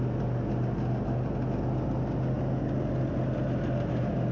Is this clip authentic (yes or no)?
yes